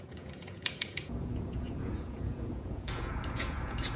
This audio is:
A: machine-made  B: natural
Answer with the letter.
A